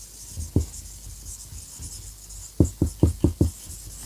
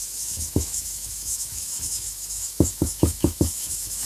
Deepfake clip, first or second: second